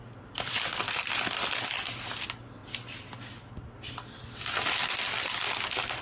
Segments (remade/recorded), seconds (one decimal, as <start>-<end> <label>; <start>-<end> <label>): 0.0-6.0 recorded